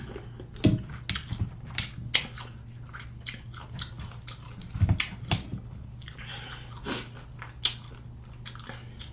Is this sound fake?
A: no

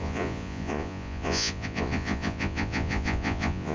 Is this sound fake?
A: yes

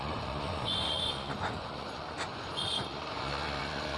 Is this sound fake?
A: yes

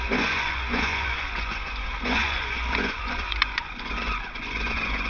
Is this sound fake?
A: yes